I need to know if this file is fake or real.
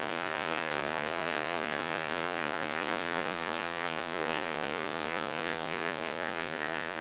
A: fake